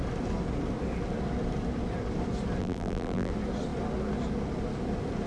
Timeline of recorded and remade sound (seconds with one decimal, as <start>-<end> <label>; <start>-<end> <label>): 0.0-2.6 recorded; 2.6-3.3 remade; 3.3-5.3 recorded